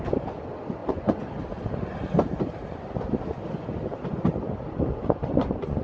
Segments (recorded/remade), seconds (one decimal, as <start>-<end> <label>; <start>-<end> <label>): 0.0-0.8 recorded; 0.8-1.4 remade; 1.4-4.9 recorded; 4.9-5.8 remade